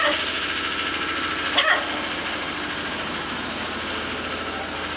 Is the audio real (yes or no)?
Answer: yes